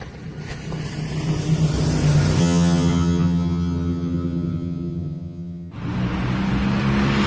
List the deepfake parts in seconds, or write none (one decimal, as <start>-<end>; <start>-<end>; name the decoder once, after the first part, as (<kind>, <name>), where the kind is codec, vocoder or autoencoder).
2.4-5.7 (vocoder, HiFi-GAN)